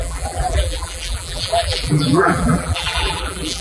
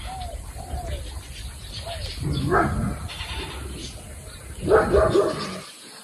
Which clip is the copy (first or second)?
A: first